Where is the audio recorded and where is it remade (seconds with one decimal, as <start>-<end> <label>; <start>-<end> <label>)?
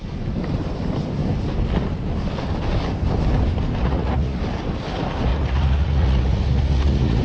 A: 0.0-3.8 recorded; 3.8-4.4 remade; 4.4-5.3 recorded; 5.3-7.2 remade